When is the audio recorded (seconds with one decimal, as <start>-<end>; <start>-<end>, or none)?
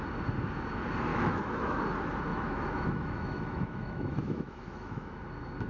0.0-1.1; 1.8-2.3; 5.2-5.7